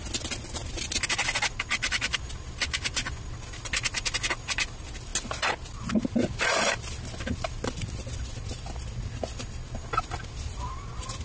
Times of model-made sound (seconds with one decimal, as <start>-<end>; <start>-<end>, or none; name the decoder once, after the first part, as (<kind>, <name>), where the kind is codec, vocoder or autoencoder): none